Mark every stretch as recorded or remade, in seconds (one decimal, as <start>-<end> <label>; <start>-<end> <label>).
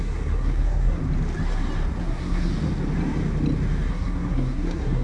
0.0-1.0 remade; 1.0-2.0 recorded; 2.0-2.5 remade; 2.5-3.9 recorded; 3.9-5.0 remade